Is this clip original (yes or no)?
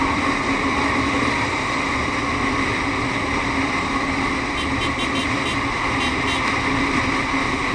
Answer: yes